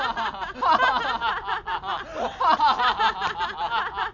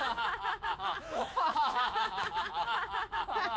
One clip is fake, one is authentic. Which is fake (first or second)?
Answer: second